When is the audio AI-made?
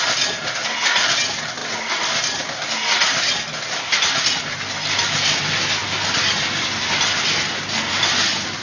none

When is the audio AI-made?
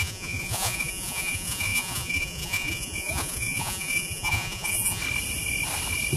0.0-5.0 (vocoder, Vocos)